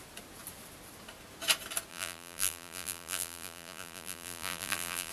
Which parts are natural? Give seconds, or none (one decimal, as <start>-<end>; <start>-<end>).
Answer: 0.0-1.9